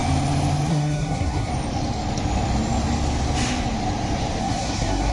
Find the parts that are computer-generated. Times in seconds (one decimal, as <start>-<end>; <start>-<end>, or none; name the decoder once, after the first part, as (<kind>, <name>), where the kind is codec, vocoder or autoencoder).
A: 0.7-1.5 (codec, SNAC); 4.4-5.1